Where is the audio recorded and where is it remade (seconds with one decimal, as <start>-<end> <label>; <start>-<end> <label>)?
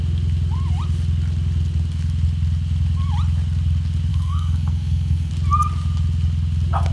0.0-4.1 recorded; 4.1-5.3 remade; 5.3-6.9 recorded